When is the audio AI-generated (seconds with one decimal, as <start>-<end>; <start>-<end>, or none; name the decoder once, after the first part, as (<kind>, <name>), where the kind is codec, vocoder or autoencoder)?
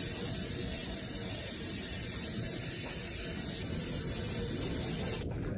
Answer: 0.8-2.0 (vocoder, BigVGAN v2)